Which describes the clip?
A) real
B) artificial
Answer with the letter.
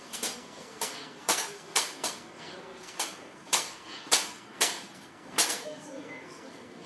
B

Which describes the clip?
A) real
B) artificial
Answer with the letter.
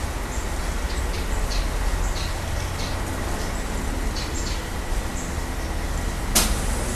A